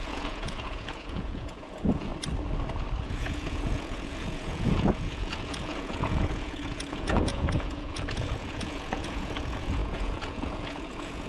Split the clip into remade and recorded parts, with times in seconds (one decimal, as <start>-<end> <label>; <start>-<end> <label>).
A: 0.0-2.1 remade; 2.1-3.0 recorded; 3.0-11.3 remade